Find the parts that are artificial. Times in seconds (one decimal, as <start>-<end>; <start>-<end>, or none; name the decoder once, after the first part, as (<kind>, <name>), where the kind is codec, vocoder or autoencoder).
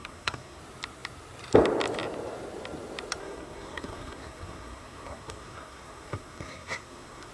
0.0-0.6 (codec, SNAC); 3.2-7.3